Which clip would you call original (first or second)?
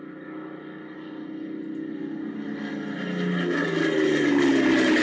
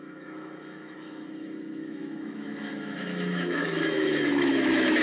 first